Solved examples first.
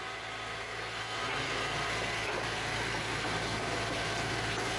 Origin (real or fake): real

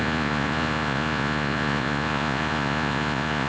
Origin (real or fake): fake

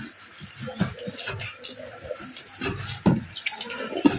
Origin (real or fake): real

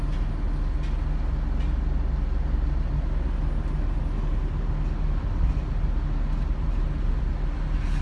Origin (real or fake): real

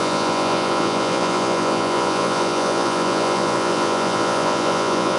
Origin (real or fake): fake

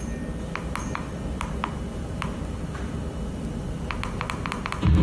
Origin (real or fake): real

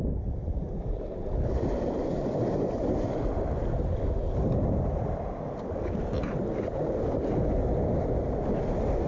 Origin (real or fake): real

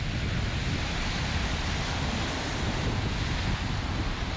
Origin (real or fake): real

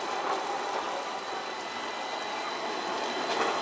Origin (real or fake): real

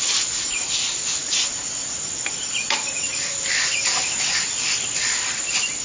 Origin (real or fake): real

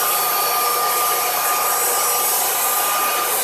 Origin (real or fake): real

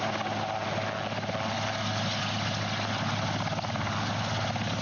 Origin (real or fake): real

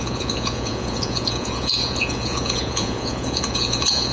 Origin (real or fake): fake